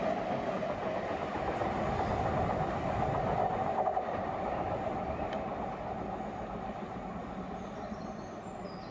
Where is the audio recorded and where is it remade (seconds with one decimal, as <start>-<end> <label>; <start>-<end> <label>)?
0.0-0.9 recorded; 0.9-2.1 remade; 2.1-3.9 recorded; 3.9-5.7 remade; 5.7-8.9 recorded